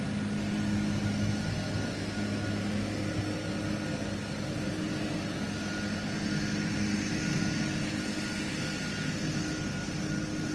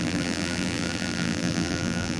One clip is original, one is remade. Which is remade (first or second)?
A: second